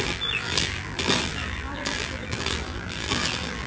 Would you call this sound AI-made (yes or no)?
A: yes